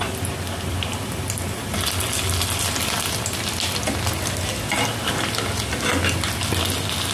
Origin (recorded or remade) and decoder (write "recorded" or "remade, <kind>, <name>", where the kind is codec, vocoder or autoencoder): recorded